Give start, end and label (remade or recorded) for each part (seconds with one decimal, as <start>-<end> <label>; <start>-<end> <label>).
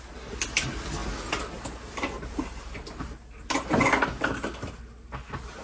0.0-5.6 recorded